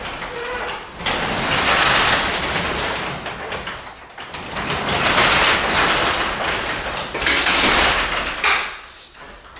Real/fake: real